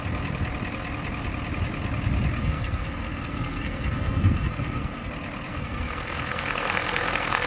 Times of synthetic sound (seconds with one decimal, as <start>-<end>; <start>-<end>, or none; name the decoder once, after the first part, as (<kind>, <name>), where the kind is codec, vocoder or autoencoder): 2.4-5.1 (codec, SNAC); 5.5-7.5